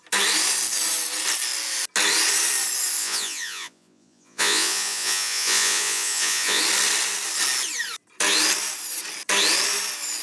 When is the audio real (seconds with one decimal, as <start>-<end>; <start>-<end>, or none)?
0.0-3.0; 6.6-10.2